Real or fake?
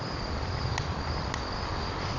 real